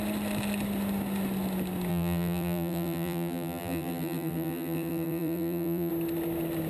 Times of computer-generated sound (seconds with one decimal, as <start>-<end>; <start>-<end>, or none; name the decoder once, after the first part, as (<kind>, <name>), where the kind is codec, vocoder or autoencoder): 1.9-5.9 (vocoder, BigVGAN v2)